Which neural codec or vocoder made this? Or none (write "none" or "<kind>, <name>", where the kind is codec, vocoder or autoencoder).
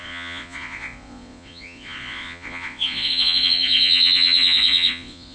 vocoder, Vocos